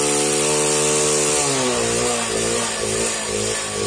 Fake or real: real